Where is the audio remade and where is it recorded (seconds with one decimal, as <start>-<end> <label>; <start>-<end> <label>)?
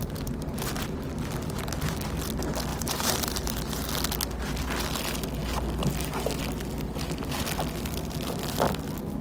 0.0-2.7 recorded; 2.7-3.9 remade; 3.9-9.2 recorded